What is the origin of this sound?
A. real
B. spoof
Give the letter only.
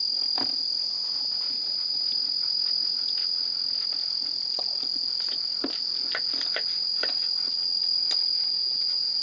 A